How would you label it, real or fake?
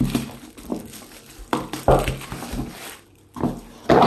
real